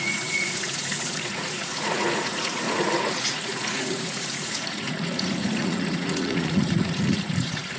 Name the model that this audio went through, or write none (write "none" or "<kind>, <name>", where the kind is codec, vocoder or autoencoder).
vocoder, Vocos